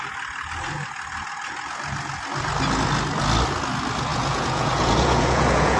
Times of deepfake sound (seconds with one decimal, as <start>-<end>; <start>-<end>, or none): 4.1-5.8